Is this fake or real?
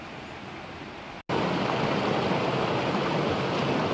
real